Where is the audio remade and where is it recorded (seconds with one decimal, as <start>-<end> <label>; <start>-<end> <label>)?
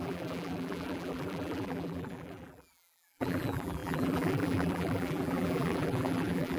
0.0-6.6 remade